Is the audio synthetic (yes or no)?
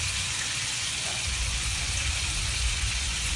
yes